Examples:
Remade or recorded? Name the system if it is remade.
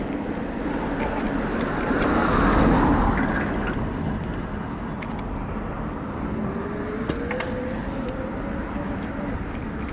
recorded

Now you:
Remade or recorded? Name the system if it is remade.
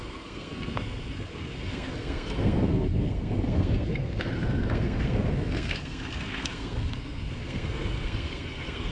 remade, codec, SNAC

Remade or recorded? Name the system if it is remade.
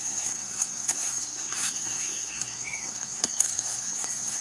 remade, codec, SNAC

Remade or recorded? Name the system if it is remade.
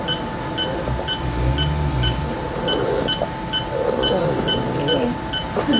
recorded